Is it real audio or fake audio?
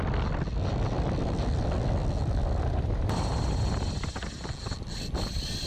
real